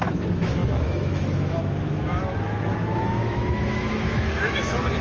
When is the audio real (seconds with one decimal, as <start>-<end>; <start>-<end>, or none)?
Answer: none